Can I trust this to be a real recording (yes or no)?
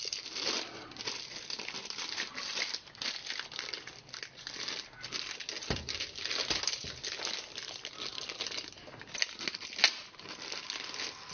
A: yes